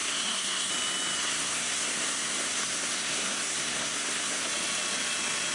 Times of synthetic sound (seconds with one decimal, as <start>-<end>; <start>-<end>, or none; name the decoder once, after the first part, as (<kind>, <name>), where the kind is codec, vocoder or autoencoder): 0.0-0.7 (codec, SNAC); 1.2-4.5